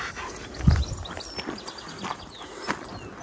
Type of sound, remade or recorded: recorded